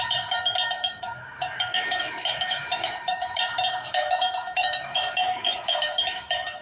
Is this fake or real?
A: fake